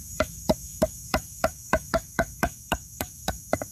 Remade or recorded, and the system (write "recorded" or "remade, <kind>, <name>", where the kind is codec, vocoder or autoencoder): remade, autoencoder, DAC-VAE